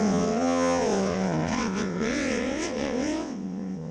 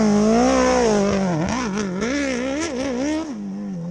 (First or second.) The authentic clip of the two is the second